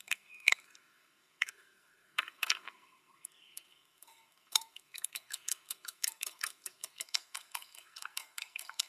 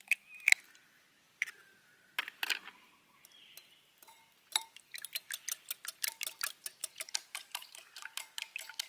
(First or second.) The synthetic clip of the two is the first